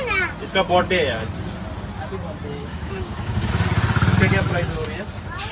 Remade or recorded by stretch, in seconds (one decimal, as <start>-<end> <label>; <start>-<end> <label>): 0.0-2.6 recorded; 2.6-3.5 remade; 3.5-5.5 recorded